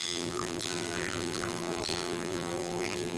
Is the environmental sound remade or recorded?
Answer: remade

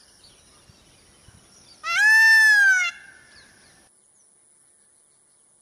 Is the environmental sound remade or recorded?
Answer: recorded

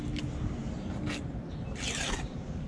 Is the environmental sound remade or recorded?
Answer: recorded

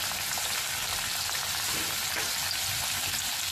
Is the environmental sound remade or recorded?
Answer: recorded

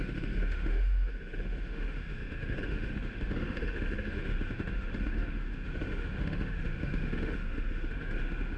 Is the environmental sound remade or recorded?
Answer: remade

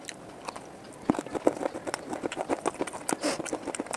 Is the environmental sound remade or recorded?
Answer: recorded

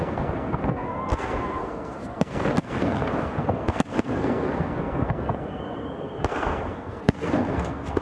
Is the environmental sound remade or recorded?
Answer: remade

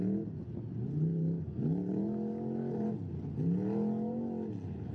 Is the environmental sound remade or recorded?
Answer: recorded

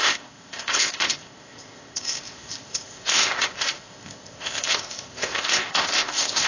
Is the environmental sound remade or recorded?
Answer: remade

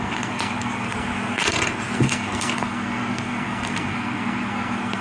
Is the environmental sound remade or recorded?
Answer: remade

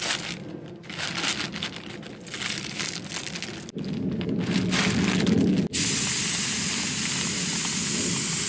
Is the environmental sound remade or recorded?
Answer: recorded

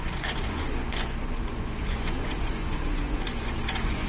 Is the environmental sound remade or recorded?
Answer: remade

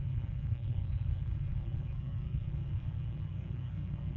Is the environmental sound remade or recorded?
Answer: remade